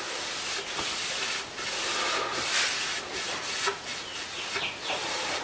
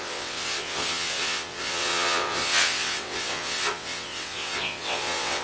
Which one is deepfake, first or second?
second